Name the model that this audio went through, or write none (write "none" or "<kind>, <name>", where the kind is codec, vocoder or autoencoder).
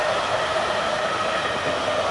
none